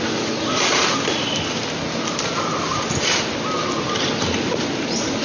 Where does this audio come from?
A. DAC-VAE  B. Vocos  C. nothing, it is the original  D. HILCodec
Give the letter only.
C